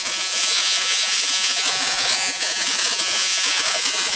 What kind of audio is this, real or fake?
fake